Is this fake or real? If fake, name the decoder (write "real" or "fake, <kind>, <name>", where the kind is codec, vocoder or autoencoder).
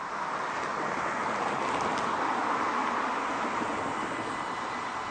real